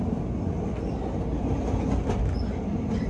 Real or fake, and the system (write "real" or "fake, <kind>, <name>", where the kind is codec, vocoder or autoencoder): real